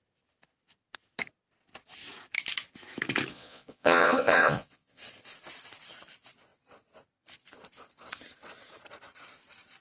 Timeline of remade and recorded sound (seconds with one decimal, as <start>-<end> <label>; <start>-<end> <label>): 0.0-3.3 recorded; 3.3-5.0 remade; 5.0-9.8 recorded